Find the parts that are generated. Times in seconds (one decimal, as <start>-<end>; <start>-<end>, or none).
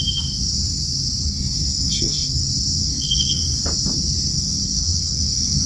1.3-2.4; 2.8-3.4; 4.3-5.7